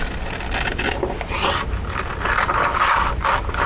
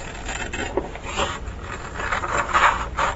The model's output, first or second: first